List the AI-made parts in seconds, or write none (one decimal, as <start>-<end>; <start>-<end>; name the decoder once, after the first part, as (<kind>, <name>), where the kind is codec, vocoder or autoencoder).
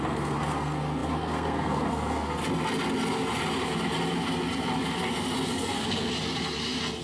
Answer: 0.0-2.4 (codec, SNAC); 5.5-6.1